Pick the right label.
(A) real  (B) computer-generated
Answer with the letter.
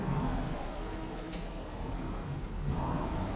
B